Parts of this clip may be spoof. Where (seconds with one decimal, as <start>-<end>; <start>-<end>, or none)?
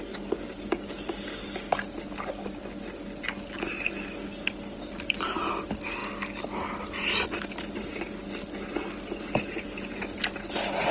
none